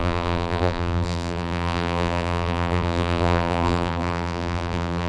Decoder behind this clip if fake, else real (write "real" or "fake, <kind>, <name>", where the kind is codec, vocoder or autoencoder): fake, vocoder, BigVGAN v2